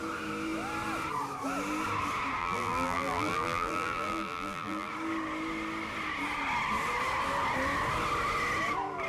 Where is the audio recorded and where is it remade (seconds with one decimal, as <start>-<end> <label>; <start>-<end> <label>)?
0.0-2.4 recorded; 2.4-4.9 remade; 4.9-9.1 recorded